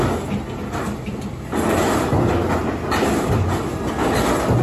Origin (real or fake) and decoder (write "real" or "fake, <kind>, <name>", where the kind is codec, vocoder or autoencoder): real